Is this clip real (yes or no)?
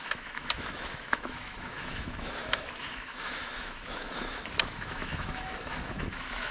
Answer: no